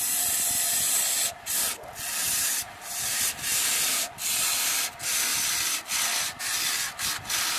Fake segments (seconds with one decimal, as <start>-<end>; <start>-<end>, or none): 2.2-3.7

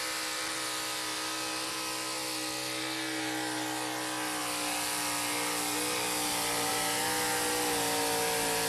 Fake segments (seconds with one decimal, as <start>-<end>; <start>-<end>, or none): none

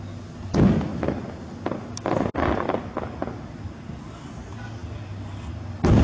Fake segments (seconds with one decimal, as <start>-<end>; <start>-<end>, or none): 0.0-0.9; 4.2-4.8

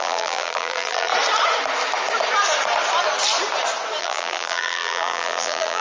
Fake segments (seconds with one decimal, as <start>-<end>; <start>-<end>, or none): 0.0-1.1; 4.0-5.8